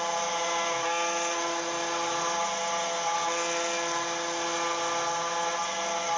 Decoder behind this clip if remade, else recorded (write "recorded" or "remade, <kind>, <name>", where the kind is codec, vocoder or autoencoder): recorded